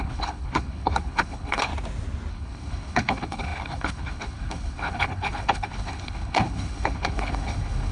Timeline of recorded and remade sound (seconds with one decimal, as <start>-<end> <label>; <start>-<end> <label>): 0.0-1.7 remade; 1.7-2.3 recorded; 2.3-7.9 remade